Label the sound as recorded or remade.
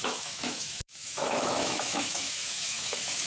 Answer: remade